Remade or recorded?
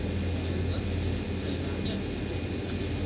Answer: recorded